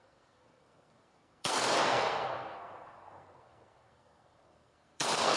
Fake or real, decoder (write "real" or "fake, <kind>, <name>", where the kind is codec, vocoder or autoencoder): fake, codec, SNAC